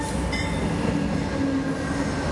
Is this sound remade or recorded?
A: recorded